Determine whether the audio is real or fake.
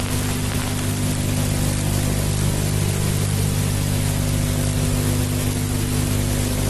real